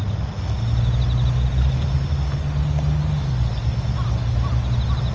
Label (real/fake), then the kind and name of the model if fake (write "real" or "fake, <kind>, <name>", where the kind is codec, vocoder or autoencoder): real